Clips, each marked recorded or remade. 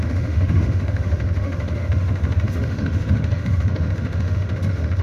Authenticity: remade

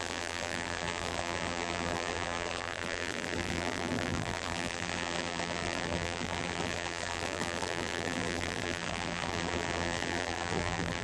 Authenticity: remade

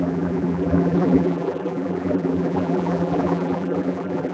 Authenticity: remade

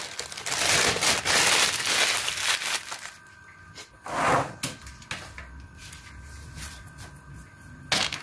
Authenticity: recorded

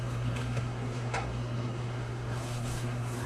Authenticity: remade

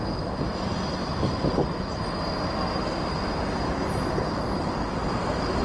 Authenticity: recorded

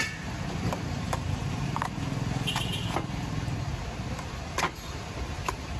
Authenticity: remade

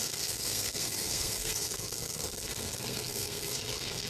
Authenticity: remade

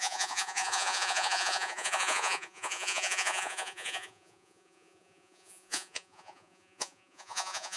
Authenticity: remade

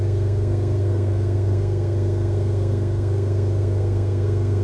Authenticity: remade